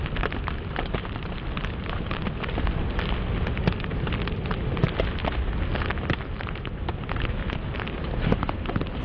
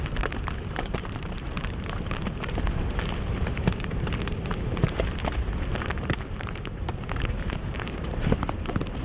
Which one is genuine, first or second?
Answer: first